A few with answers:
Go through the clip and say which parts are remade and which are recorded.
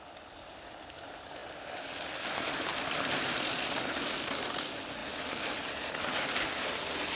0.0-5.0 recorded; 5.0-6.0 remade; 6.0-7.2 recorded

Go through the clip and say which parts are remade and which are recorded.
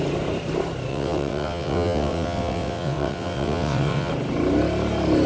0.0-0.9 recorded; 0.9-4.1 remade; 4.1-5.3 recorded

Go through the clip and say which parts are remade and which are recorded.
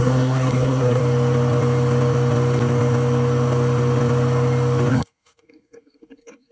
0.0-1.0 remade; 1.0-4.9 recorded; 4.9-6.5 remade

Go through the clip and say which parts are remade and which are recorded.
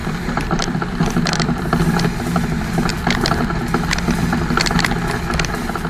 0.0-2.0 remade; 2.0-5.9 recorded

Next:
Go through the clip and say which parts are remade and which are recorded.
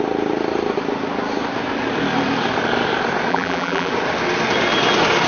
0.0-3.3 recorded; 3.3-3.9 remade; 3.9-5.3 recorded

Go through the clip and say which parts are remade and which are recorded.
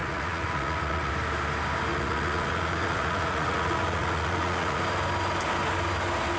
0.0-1.1 remade; 1.1-1.9 recorded; 1.9-4.8 remade; 4.8-6.4 recorded